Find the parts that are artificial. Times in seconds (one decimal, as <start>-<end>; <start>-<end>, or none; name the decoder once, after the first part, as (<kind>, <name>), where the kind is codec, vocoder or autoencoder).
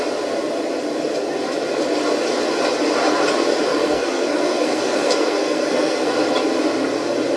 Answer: 3.7-6.1 (codec, SNAC)